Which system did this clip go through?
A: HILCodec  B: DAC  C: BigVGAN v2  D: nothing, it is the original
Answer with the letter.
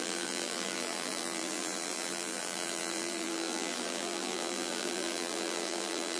C